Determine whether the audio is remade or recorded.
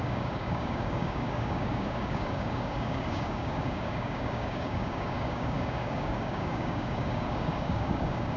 remade